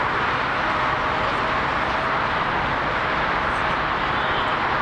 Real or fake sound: real